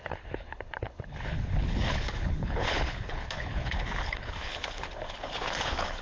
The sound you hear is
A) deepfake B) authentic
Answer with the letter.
A